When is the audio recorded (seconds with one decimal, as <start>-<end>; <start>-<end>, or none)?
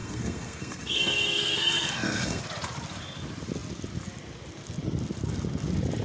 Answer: 2.4-6.0